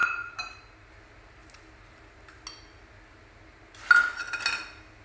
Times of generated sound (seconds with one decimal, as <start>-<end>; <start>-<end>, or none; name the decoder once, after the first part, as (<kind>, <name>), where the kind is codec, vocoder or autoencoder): none